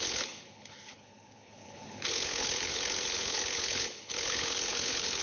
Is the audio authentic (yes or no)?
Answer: no